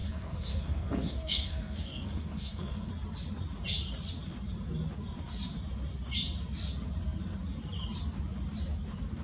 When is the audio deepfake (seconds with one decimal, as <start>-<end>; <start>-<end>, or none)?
0.0-2.9